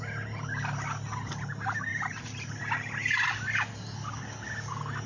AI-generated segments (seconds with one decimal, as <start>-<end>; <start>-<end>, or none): 1.9-2.5